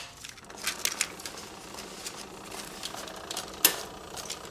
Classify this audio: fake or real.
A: real